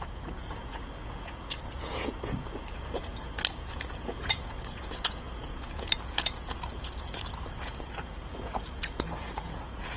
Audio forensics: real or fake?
fake